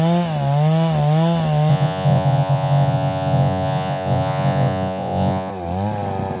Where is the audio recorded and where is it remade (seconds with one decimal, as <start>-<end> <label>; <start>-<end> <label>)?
0.0-1.7 recorded; 1.7-5.5 remade; 5.5-6.4 recorded